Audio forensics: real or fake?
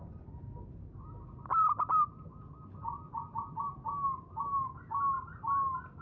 real